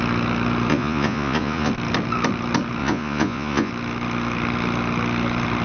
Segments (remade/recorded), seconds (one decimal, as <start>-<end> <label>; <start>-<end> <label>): 0.0-0.7 recorded; 0.7-1.7 remade; 1.7-2.8 recorded; 2.8-3.7 remade; 3.7-5.6 recorded